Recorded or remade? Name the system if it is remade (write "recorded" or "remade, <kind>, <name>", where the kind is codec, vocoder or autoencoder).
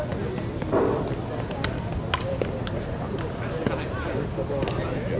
recorded